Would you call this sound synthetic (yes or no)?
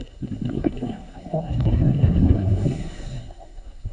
yes